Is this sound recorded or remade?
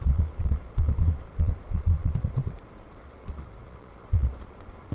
remade